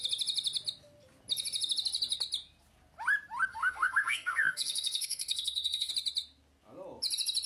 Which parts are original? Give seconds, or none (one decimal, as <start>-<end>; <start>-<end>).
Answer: 0.0-3.5; 5.9-7.5